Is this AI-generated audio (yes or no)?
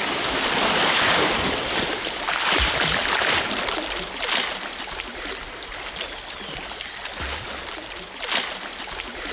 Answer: no